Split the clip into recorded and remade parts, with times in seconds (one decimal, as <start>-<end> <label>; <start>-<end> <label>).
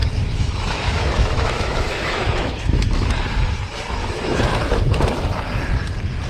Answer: 0.0-3.1 remade; 3.1-4.0 recorded; 4.0-5.0 remade; 5.0-6.3 recorded